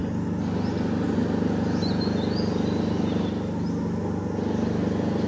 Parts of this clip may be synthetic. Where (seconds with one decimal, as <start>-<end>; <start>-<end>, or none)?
none